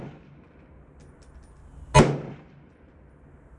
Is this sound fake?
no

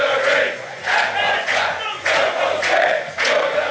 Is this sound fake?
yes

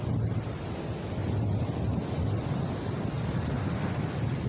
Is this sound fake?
no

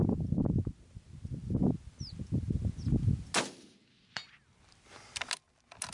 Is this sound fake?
no